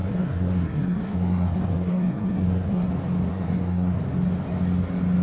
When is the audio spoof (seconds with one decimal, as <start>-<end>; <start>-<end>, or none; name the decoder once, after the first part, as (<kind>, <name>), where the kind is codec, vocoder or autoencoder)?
0.0-2.9 (codec, SNAC); 3.3-4.0